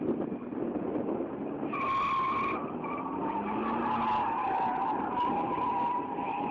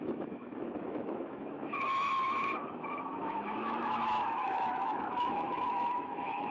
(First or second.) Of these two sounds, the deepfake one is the second